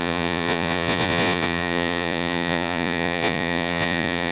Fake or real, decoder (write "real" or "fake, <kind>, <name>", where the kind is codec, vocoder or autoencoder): fake, vocoder, Vocos